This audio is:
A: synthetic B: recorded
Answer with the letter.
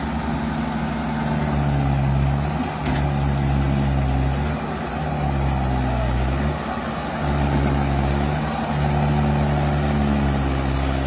B